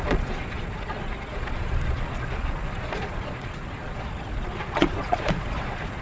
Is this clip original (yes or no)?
no